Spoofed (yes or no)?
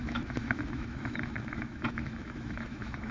yes